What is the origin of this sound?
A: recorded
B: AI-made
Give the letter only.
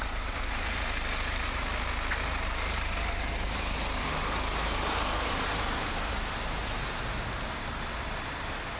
A